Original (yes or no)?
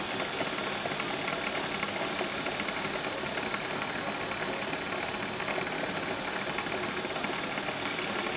yes